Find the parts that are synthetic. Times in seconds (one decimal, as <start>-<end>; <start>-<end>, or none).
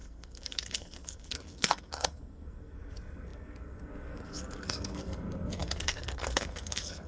0.0-7.1